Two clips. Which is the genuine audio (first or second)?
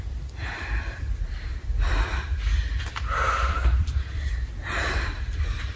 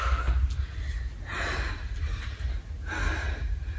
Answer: second